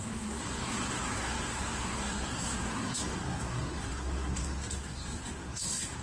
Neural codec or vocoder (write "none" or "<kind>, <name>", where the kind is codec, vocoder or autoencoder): codec, SNAC